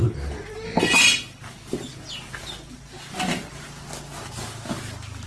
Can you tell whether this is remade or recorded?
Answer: recorded